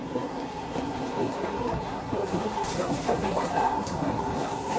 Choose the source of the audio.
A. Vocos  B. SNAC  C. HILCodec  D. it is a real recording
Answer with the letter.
B